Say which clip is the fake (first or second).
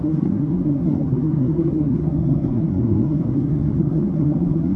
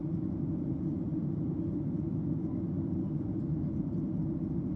first